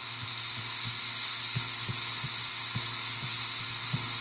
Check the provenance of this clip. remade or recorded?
recorded